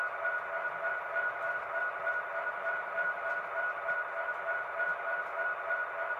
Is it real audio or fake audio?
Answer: real